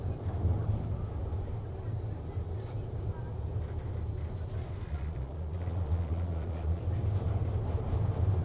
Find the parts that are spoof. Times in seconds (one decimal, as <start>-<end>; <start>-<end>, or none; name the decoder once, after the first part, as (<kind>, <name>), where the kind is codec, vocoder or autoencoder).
4.9-6.8 (vocoder, Vocos)